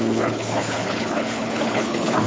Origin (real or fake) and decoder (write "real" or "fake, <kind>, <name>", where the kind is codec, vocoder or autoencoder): fake, codec, HILCodec